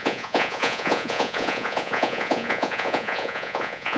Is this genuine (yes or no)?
no